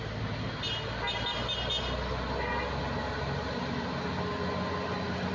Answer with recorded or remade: recorded